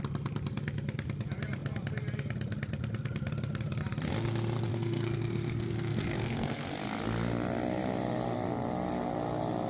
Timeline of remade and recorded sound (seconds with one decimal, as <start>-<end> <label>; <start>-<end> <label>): 0.0-4.7 recorded; 4.7-6.7 remade; 6.7-9.7 recorded